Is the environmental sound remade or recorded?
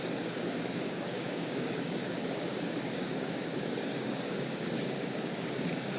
remade